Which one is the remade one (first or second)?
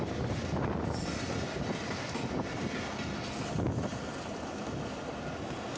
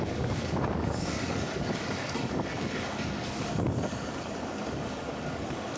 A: second